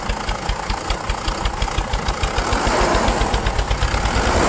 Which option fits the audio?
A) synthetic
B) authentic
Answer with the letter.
B